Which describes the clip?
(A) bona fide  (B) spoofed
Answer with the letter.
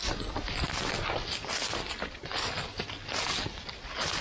A